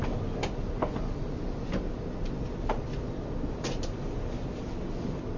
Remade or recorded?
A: recorded